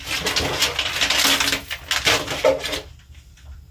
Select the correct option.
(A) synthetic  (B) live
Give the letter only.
B